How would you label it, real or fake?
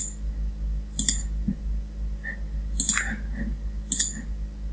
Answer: real